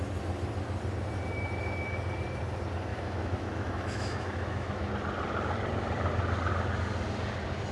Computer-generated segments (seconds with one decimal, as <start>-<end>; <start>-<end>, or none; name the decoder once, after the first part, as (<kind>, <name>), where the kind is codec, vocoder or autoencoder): 2.9-4.9 (autoencoder, DAC-VAE)